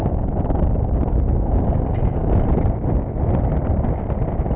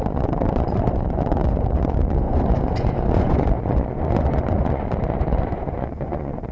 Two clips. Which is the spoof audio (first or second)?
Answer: second